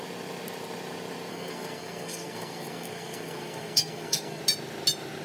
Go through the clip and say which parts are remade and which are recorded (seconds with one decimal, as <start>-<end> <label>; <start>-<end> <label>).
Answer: 0.0-1.3 recorded; 1.3-4.4 remade; 4.4-5.2 recorded